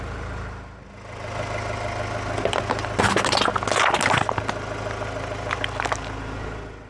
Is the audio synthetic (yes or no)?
no